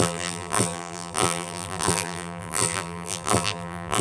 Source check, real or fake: fake